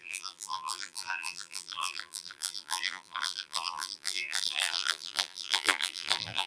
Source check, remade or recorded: remade